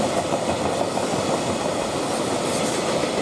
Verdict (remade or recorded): recorded